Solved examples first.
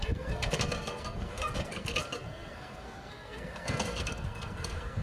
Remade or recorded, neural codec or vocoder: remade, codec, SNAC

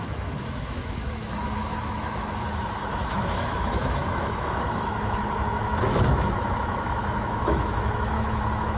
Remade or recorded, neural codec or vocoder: remade, autoencoder, DAC-VAE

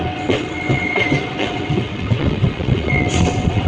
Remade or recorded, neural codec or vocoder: remade, vocoder, WaveNeXt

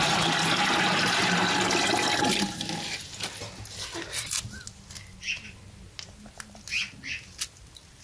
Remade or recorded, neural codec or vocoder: recorded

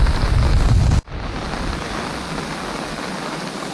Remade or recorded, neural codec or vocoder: recorded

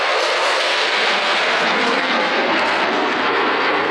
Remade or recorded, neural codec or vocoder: remade, codec, SNAC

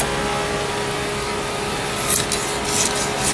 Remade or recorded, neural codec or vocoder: recorded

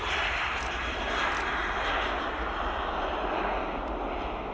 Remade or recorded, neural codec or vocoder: recorded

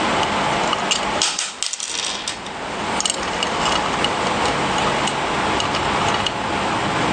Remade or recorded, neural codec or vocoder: recorded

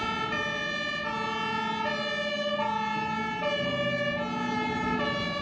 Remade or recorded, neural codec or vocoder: recorded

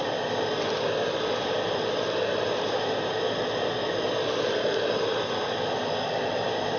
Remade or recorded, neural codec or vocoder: recorded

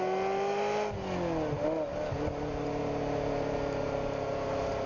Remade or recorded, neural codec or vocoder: recorded